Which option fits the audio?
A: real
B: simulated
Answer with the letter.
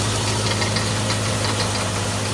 A